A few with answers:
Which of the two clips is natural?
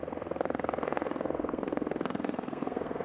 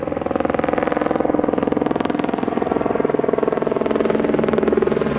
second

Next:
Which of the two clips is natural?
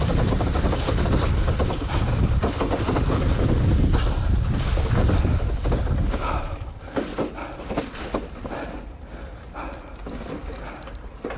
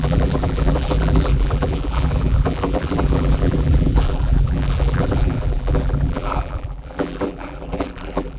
first